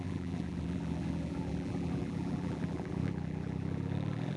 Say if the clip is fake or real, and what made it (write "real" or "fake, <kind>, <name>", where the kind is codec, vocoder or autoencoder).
fake, vocoder, BigVGAN v2